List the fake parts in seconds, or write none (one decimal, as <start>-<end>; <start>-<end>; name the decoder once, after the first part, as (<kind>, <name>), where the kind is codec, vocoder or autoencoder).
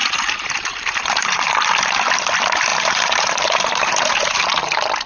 0.0-1.4 (vocoder, BigVGAN v2); 2.7-4.4